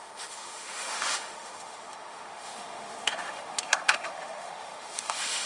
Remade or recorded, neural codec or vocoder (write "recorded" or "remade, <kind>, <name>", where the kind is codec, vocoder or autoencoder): remade, autoencoder, DAC-VAE